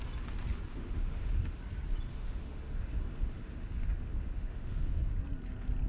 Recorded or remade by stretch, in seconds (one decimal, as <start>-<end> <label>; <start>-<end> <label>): 0.0-0.7 recorded; 0.7-1.6 remade; 1.6-2.1 recorded; 2.1-5.2 remade; 5.2-5.9 recorded